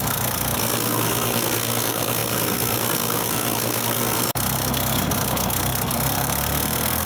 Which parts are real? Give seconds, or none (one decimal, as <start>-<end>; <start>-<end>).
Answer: none